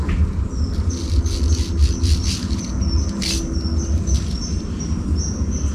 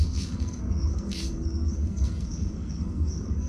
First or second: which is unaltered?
first